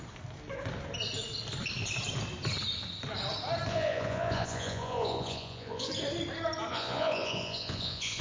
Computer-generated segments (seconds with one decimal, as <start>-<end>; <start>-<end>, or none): 3.7-5.9; 6.7-8.2